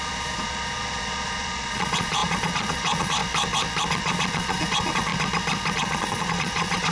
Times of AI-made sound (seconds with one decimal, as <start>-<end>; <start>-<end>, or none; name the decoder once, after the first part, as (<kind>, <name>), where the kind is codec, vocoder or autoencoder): 0.0-3.2 (vocoder, Vocos); 3.9-5.1; 5.7-6.9